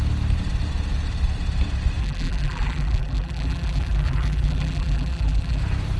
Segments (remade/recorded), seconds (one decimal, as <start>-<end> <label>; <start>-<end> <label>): 0.0-2.0 recorded; 2.0-5.6 remade; 5.6-6.0 recorded